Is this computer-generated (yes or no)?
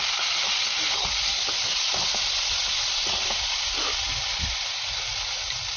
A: no